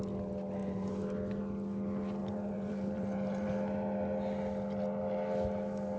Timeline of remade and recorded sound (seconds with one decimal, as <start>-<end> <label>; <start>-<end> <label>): 0.0-2.2 recorded; 2.2-3.5 remade; 3.5-6.0 recorded

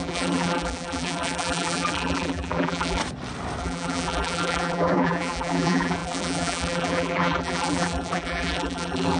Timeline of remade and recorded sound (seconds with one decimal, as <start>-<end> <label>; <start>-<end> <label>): 0.0-3.0 remade; 3.0-3.6 recorded; 3.6-9.2 remade

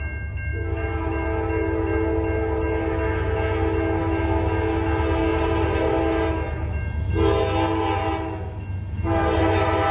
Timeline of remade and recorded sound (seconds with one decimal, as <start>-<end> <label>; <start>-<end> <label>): 0.0-0.5 recorded; 0.5-1.1 remade; 1.1-5.3 recorded; 5.3-6.0 remade; 6.0-9.9 recorded